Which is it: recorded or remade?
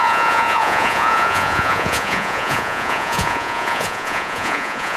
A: remade